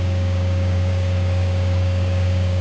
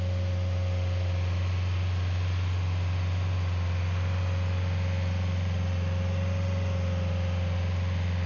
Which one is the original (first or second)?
second